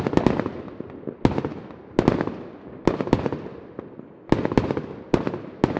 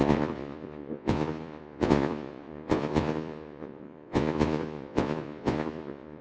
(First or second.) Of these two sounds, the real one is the first